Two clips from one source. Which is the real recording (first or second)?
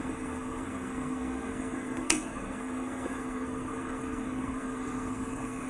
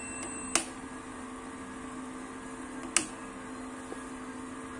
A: second